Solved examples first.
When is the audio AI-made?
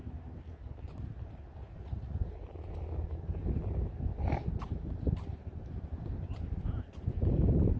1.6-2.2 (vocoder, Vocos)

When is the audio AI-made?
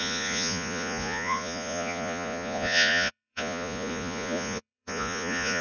0.0-5.6 (vocoder, Vocos)